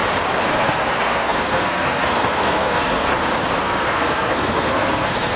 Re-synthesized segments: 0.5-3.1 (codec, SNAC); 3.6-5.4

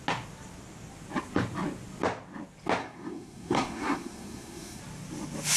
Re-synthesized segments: 2.8-4.8 (codec, SNAC)

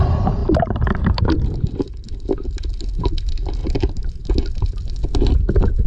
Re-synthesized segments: 0.4-2.3 (vocoder, BigVGAN v2); 3.6-4.3

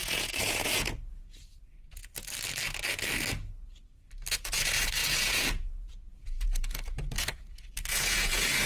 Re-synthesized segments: 0.0-2.1 (vocoder, Vocos); 4.3-8.7

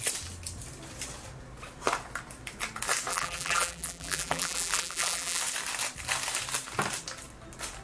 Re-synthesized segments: 3.1-5.4 (vocoder, BigVGAN v2)

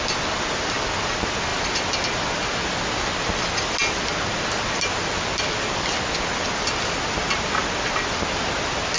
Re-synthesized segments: none

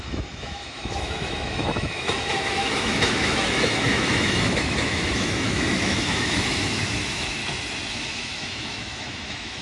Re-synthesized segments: 0.0-7.4 (autoencoder, DAC-VAE); 7.9-9.6

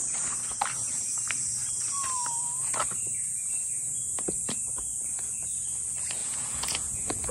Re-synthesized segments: 4.9-5.4 (vocoder, Vocos); 6.2-7.3